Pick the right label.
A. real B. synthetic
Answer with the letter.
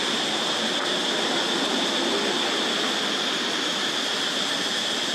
A